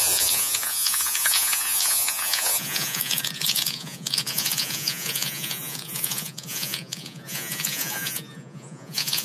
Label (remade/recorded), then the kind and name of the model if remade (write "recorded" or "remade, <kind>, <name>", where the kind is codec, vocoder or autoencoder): remade, vocoder, Vocos